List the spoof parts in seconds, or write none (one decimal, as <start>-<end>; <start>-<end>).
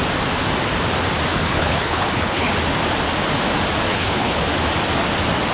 1.3-2.5; 3.9-4.4